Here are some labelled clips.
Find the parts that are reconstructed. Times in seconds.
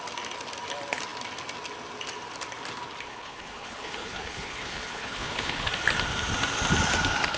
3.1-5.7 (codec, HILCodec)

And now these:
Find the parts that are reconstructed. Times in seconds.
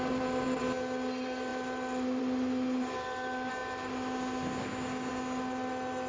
none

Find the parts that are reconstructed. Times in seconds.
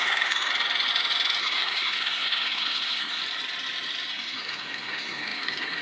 0.0-0.5 (codec, SNAC); 1.4-3.2; 4.1-5.8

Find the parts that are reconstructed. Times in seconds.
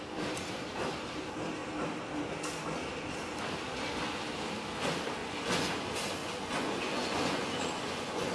5.2-5.7 (vocoder, Vocos); 6.2-8.3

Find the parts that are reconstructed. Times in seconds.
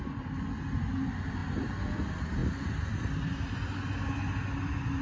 none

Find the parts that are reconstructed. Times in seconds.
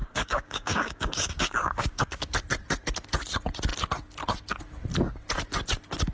0.0-2.3 (codec, DAC)